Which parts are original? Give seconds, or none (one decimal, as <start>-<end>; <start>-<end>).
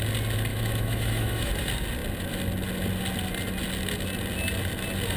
0.0-0.5; 1.5-5.2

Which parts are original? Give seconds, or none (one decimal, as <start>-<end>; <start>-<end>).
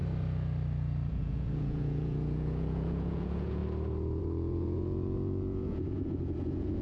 0.0-1.1; 3.6-4.2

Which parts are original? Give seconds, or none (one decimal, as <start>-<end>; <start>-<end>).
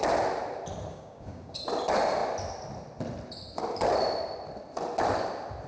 0.0-0.9; 1.6-5.7